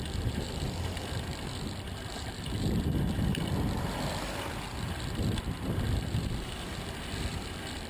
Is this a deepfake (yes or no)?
yes